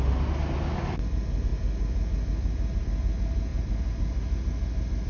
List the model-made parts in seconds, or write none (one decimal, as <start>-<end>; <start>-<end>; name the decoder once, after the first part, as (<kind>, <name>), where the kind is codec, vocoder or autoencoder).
none